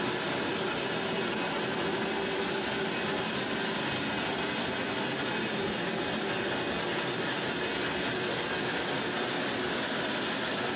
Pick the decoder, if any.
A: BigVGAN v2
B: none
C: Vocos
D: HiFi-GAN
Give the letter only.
B